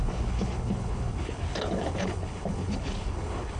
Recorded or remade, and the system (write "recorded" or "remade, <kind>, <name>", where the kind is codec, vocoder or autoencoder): remade, codec, HILCodec